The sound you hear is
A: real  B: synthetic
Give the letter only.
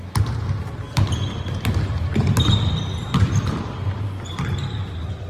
A